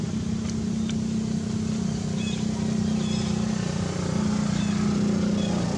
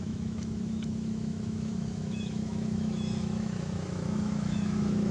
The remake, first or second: second